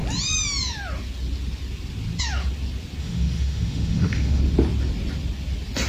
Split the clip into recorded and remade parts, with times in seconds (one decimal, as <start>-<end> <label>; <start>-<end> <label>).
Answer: 0.0-3.0 recorded; 3.0-4.4 remade; 4.4-5.9 recorded